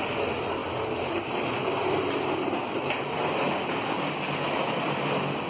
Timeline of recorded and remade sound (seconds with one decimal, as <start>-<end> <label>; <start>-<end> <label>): 0.0-5.5 recorded

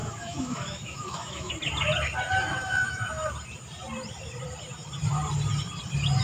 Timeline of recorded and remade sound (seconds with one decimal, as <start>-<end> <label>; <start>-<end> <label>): 0.0-1.5 remade; 1.5-2.5 recorded; 2.5-3.3 remade; 3.3-6.2 recorded

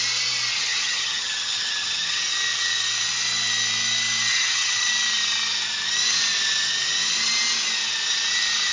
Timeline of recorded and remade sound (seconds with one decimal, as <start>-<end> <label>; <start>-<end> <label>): 0.0-0.5 recorded; 0.5-2.2 remade; 2.2-4.3 recorded; 4.3-4.9 remade; 4.9-8.7 recorded

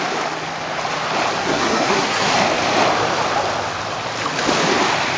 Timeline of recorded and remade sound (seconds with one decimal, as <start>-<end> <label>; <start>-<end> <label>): 0.0-1.4 recorded; 1.4-2.3 remade; 2.3-5.2 recorded